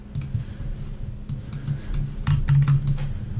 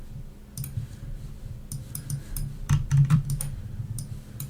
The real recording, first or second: first